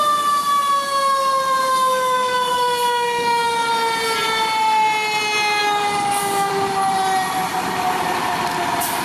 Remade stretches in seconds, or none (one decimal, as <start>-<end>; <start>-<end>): 1.7-3.7; 5.6-6.5